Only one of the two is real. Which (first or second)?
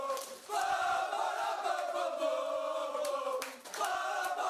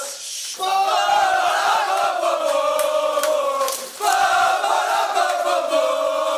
second